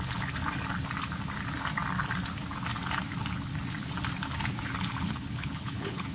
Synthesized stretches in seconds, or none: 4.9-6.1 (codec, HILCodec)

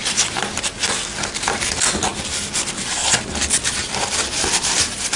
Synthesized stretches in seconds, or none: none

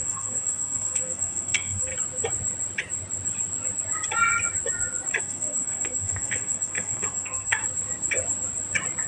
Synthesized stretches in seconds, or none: 0.0-1.9 (codec, SNAC); 5.2-7.6

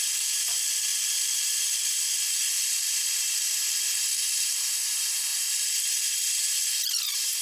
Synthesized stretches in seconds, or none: none

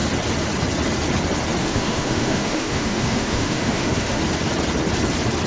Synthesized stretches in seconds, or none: 1.6-4.2 (autoencoder, DAC-VAE)